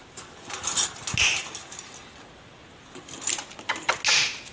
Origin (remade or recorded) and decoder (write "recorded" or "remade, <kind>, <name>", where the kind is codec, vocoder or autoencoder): recorded